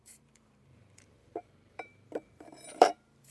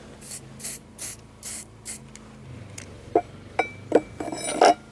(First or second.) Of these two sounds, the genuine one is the second